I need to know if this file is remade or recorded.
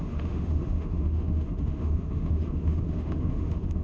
remade